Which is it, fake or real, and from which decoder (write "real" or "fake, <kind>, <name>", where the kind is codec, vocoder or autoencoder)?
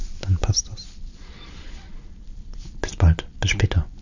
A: real